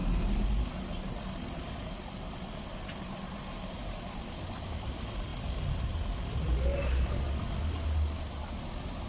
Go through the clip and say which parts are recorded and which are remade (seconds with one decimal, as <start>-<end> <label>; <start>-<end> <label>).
0.0-9.1 recorded